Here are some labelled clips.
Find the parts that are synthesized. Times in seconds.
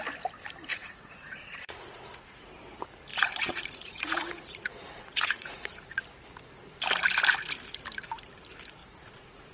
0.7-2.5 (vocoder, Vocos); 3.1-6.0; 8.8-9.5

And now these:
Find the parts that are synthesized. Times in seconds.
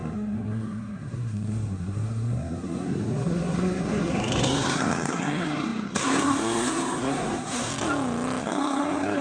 0.0-7.7 (codec, SNAC); 8.4-9.2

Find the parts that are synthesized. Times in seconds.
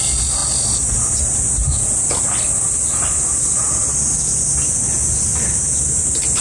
none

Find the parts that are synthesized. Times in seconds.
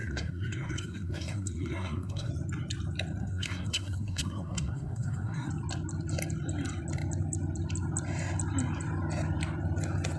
0.0-2.3 (codec, SNAC); 3.2-5.5